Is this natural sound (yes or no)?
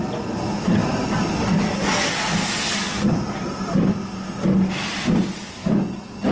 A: yes